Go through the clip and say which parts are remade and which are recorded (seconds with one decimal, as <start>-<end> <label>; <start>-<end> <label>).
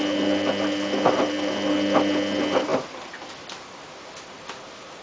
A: 0.0-5.0 recorded